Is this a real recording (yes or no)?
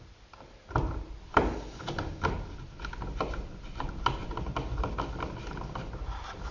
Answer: yes